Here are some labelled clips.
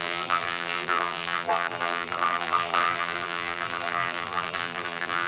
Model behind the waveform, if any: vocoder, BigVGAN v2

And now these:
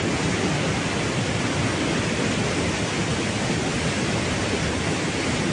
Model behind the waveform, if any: none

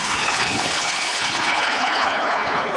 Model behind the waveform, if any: codec, HILCodec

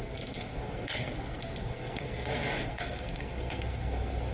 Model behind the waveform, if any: codec, SNAC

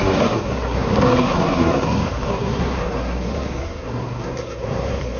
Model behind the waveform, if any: codec, SNAC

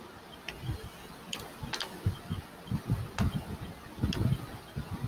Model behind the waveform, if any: none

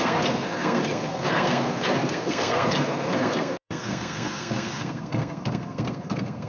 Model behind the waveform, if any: codec, SNAC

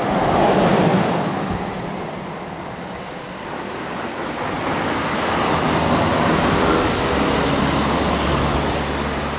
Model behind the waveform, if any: none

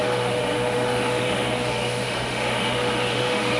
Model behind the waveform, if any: autoencoder, DAC-VAE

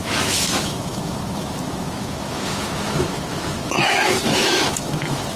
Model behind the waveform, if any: autoencoder, DAC-VAE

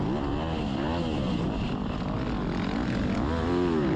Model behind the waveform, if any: none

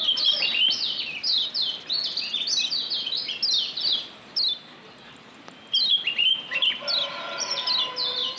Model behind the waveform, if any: none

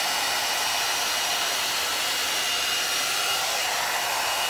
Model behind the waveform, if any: none